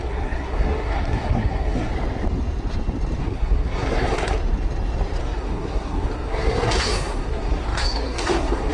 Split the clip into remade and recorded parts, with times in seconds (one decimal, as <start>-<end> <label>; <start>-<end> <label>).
0.0-1.9 remade; 1.9-3.2 recorded; 3.2-4.4 remade; 4.4-5.2 recorded; 5.2-8.7 remade